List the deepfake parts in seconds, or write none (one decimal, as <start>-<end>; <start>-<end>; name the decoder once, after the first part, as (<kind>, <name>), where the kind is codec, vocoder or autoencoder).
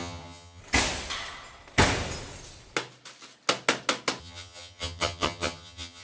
0.0-0.6 (vocoder, HiFi-GAN); 4.2-6.0